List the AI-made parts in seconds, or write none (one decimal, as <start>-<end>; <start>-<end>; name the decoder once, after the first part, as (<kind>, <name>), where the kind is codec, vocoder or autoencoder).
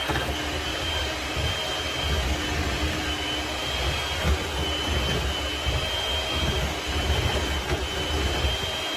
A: 0.7-1.5 (vocoder, BigVGAN v2)